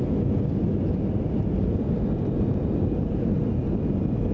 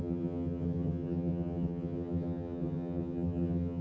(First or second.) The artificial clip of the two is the second